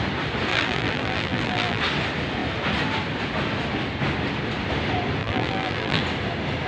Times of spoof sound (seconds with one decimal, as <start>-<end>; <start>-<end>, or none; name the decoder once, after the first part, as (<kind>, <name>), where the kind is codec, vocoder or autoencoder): 0.5-1.8 (vocoder, BigVGAN v2); 5.2-6.0